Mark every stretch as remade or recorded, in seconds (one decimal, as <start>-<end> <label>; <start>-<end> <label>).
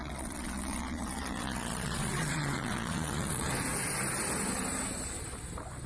0.0-3.5 remade; 3.5-5.9 recorded